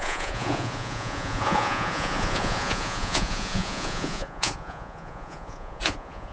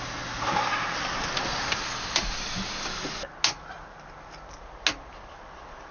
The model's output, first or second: first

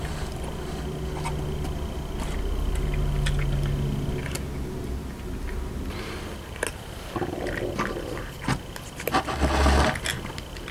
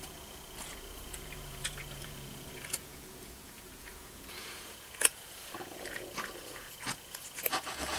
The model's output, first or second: second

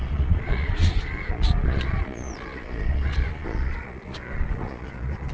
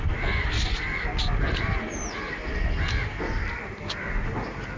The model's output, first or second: first